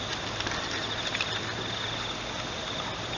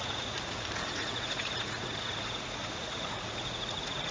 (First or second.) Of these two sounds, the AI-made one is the second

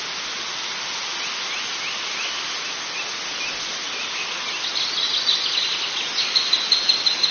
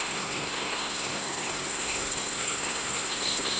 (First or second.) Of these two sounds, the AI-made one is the second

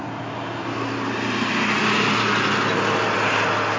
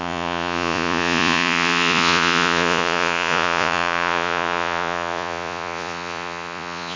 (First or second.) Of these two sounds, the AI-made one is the second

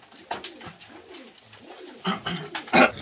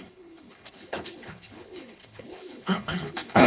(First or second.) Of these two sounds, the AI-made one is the second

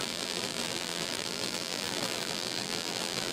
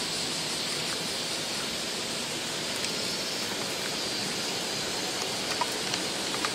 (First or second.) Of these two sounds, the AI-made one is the first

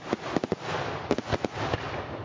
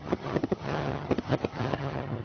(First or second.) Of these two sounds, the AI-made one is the second